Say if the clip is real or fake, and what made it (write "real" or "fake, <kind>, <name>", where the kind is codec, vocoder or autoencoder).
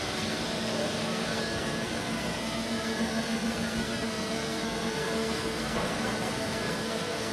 fake, codec, SNAC